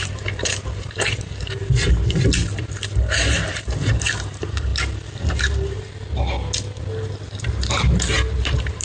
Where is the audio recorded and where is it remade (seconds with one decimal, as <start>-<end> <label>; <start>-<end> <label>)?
0.0-2.4 remade; 2.4-3.5 recorded; 3.5-4.7 remade; 4.7-5.3 recorded; 5.3-5.9 remade; 5.9-8.4 recorded; 8.4-8.8 remade